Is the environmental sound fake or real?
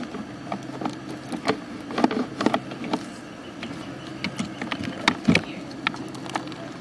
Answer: real